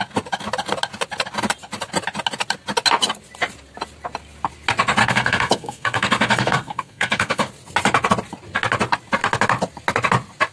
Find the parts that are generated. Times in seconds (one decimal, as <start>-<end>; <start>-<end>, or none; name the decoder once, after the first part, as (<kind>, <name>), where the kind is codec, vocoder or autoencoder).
5.0-7.5 (codec, SNAC)